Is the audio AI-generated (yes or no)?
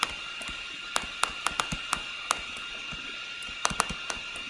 no